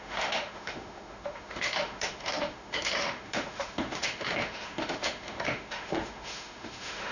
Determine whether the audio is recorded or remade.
remade